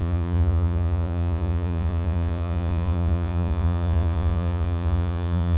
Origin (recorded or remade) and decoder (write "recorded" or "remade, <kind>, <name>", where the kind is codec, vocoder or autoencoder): remade, vocoder, Vocos